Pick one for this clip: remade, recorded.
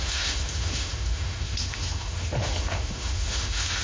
remade